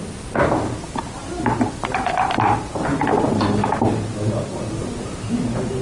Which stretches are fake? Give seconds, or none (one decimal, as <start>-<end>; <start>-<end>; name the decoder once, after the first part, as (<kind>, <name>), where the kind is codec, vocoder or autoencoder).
0.0-1.2 (vocoder, BigVGAN v2); 2.0-3.1